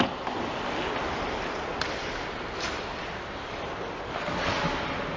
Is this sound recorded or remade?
recorded